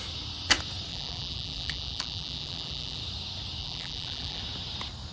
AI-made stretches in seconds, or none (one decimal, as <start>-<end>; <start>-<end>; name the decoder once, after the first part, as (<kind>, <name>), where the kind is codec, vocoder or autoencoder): 0.9-3.0 (vocoder, BigVGAN v2); 3.6-4.4